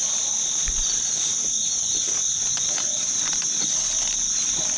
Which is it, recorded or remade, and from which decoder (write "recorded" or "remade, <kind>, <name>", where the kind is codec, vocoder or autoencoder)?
recorded